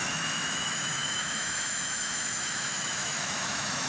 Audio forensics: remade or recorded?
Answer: remade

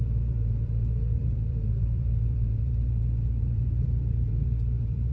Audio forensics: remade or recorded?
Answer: remade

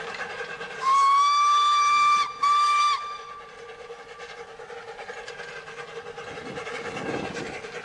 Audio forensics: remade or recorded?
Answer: recorded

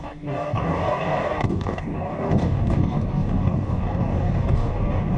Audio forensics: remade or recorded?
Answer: remade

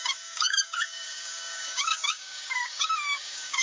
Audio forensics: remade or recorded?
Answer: remade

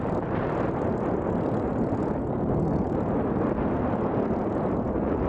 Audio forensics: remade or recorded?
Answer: recorded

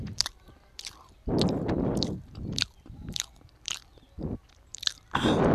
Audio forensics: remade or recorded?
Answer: remade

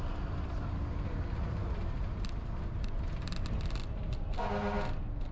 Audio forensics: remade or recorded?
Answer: recorded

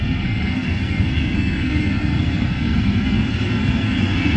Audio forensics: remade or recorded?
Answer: remade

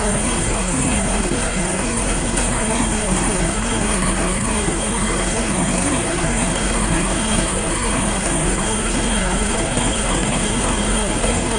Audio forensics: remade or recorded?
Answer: remade